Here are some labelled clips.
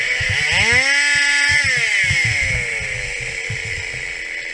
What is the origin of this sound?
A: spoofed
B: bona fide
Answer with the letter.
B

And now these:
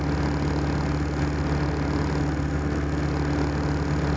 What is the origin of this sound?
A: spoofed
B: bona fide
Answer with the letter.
B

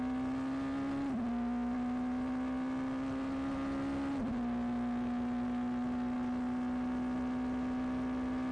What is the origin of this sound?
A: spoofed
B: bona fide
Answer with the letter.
B